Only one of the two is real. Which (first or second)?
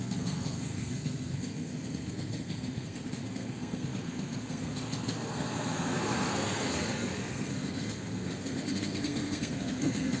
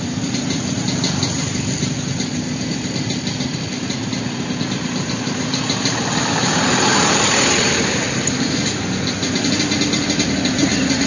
second